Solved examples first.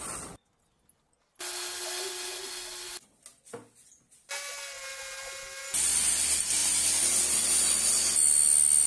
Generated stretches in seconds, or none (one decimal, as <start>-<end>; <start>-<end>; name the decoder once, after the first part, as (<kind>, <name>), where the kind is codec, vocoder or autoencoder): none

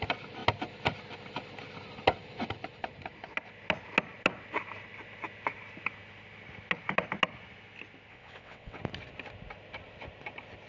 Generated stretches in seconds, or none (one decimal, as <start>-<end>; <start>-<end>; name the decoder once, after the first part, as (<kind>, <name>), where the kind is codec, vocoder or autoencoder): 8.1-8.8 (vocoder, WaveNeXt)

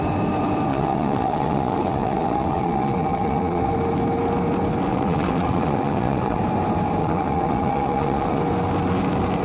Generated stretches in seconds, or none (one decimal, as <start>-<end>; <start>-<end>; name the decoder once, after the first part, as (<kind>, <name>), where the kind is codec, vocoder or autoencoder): 0.7-3.7 (vocoder, WaveNeXt); 4.9-6.4; 7.0-8.4

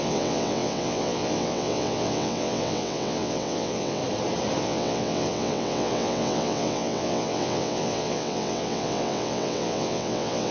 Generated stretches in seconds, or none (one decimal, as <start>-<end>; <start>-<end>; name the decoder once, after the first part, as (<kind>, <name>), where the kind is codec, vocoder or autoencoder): 0.0-4.0 (vocoder, WaveNeXt); 4.6-10.5

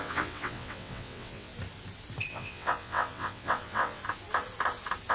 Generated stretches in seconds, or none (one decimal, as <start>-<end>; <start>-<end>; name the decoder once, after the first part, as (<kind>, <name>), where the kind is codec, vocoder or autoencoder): 0.0-1.5 (vocoder, WaveNeXt); 2.3-4.0